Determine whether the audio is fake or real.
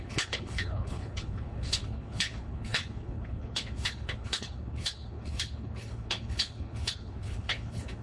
fake